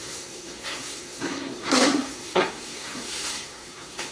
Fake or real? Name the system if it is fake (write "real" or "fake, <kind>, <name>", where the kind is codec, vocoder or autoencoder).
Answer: fake, codec, SNAC